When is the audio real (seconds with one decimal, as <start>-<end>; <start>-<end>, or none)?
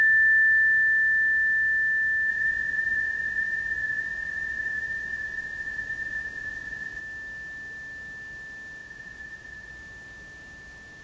0.0-2.3; 7.0-8.8; 9.7-11.0